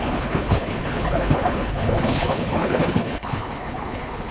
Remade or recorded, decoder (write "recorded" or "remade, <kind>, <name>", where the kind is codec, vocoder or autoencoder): remade, codec, HILCodec